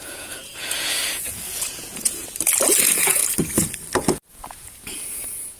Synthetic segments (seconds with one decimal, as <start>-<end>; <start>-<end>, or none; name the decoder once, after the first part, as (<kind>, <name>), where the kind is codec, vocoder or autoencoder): 0.0-2.2 (vocoder, Vocos); 2.8-3.2; 4.3-5.6